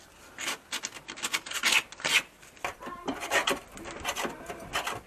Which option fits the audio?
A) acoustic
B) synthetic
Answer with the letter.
A